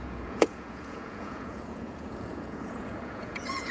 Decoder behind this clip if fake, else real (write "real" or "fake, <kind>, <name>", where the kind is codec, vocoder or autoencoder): fake, vocoder, Vocos